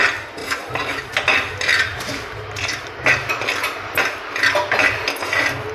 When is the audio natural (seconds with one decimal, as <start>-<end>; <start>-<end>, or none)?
0.0-0.4; 1.0-1.9; 2.6-5.7